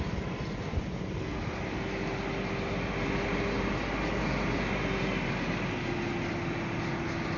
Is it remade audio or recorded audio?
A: recorded